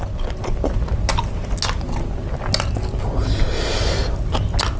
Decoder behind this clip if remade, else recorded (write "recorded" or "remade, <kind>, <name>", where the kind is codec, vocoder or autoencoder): recorded